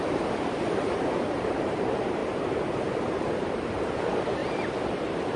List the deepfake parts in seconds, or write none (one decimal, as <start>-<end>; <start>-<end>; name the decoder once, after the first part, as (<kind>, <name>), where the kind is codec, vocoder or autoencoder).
0.0-4.4 (vocoder, BigVGAN v2); 5.0-5.4